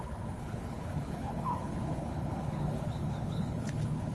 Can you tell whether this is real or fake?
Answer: fake